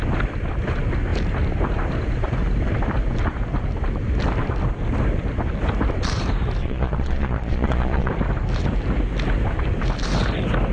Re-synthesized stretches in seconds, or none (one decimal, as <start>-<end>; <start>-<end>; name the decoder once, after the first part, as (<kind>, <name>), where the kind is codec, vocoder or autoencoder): 6.6-8.1 (vocoder, Vocos)

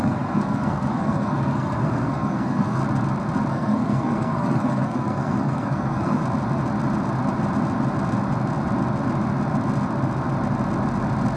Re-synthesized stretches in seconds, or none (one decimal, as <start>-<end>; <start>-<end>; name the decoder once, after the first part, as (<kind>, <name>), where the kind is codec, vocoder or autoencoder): 0.0-2.8 (codec, SNAC); 3.5-6.2

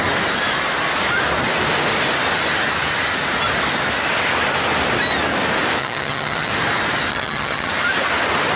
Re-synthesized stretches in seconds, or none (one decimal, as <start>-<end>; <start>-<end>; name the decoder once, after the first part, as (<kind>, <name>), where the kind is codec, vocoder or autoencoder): 5.8-6.5 (vocoder, HiFi-GAN); 7.1-7.7